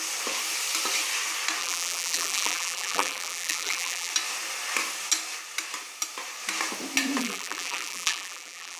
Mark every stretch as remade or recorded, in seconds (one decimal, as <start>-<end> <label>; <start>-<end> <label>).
0.0-1.6 recorded; 1.6-4.1 remade; 4.1-7.2 recorded; 7.2-8.8 remade